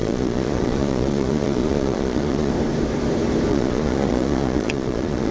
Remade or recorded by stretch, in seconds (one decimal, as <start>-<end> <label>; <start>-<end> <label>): 0.0-2.5 remade; 2.5-3.5 recorded; 3.5-5.3 remade